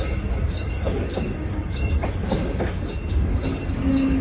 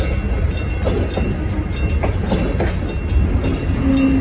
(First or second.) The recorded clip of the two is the second